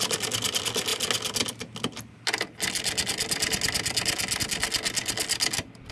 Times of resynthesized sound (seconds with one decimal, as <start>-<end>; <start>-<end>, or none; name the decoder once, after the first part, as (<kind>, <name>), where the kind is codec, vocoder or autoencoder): none